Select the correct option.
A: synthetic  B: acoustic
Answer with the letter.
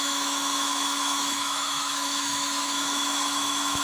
A